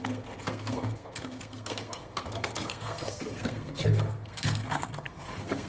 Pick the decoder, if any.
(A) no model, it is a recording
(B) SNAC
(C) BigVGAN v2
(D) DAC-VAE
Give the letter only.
B